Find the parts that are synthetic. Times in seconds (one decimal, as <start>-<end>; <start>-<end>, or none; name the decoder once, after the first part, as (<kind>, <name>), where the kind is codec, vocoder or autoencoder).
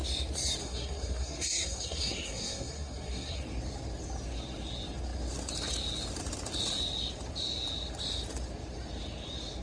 0.6-3.4 (codec, SNAC)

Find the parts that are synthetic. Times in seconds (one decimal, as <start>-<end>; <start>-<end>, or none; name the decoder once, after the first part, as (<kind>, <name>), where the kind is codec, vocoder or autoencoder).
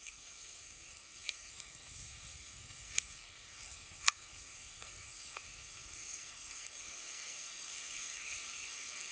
0.0-9.1 (codec, SNAC)